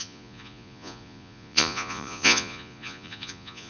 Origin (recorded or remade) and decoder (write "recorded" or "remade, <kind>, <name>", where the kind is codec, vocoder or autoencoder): remade, vocoder, Vocos